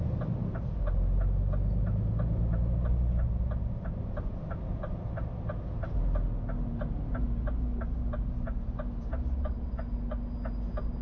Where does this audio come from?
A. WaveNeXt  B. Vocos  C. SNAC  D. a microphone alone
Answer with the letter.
D